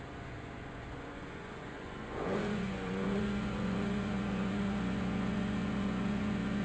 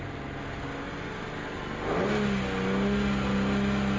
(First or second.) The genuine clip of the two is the second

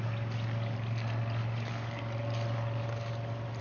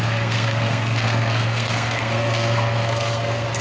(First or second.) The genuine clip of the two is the first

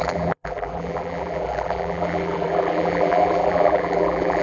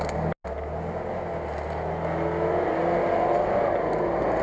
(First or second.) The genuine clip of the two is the second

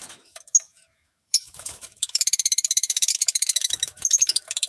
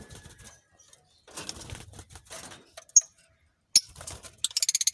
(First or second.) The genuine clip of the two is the second